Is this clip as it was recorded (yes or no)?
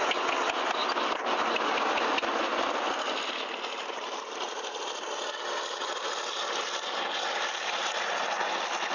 yes